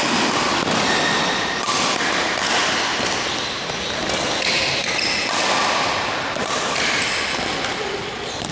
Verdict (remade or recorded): recorded